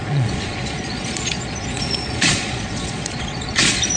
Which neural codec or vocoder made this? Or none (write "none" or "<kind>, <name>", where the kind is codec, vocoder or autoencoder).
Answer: vocoder, Vocos